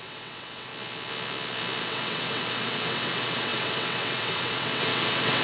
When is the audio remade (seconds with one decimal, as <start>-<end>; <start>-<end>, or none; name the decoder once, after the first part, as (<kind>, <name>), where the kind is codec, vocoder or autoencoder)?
0.0-0.7 (vocoder, WaveNeXt); 1.8-5.4